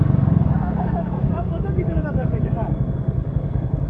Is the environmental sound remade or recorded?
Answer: remade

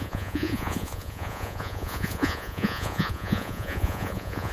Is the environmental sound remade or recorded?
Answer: remade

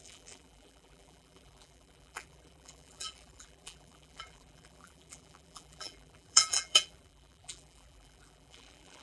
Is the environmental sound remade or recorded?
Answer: remade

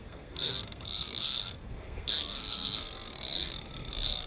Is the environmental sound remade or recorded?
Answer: remade